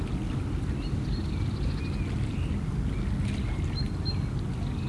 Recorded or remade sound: recorded